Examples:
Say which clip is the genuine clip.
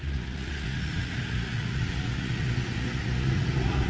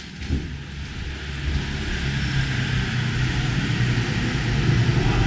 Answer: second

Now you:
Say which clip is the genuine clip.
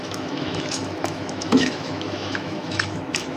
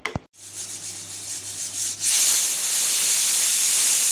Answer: second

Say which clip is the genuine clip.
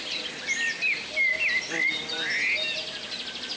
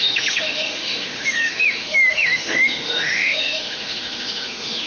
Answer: first